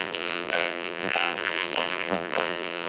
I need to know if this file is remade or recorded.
remade